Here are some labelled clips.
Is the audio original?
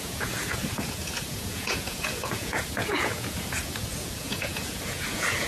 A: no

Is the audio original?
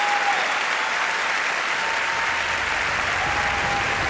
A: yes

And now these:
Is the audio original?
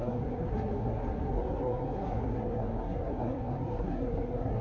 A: no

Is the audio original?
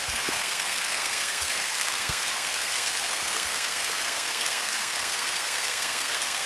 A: no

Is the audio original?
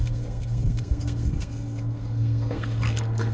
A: no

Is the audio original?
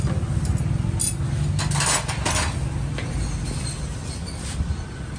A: yes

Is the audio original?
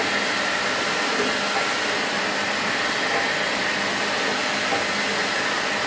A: yes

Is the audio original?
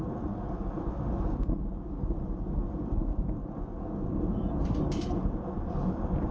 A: yes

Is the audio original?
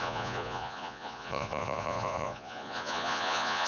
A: no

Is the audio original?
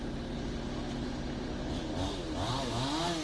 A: yes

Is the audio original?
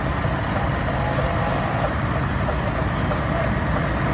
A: yes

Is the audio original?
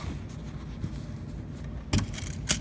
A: yes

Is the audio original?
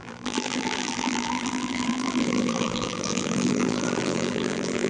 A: no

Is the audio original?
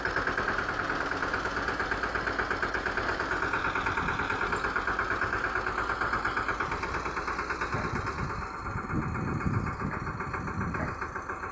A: yes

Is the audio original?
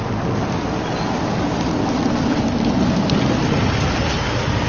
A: yes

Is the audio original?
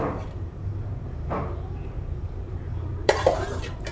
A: no